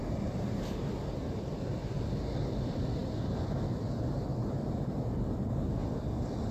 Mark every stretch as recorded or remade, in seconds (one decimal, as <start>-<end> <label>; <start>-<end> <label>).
0.0-6.5 recorded